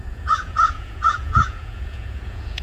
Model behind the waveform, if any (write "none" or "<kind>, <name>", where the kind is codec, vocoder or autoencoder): vocoder, Vocos